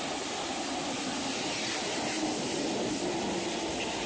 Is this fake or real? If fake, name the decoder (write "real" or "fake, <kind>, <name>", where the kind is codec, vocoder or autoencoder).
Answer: real